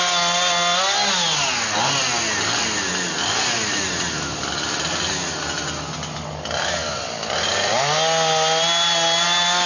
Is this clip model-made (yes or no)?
no